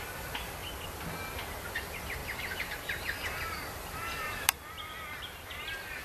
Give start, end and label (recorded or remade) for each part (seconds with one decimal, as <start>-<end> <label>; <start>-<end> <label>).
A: 0.0-0.6 remade; 0.6-1.3 recorded; 1.3-6.0 remade